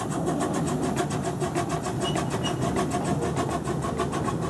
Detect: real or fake real